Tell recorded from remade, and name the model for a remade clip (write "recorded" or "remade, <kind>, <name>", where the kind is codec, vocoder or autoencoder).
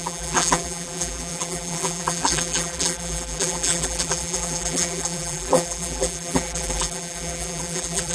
remade, vocoder, BigVGAN v2